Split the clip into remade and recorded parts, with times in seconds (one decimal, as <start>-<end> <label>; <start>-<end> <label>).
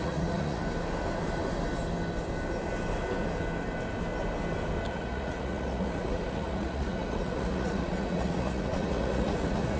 0.0-0.6 remade; 0.6-4.9 recorded; 4.9-9.8 remade